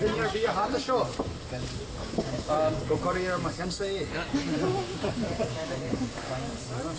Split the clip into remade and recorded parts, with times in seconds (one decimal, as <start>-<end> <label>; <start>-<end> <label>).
0.0-2.0 recorded; 2.0-2.8 remade; 2.8-4.7 recorded; 4.7-6.3 remade; 6.3-7.0 recorded